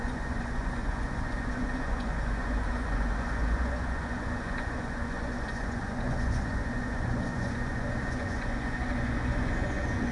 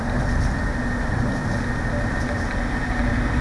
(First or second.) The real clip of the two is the second